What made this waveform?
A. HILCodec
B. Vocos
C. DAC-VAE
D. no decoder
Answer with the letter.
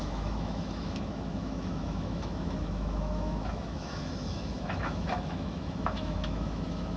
C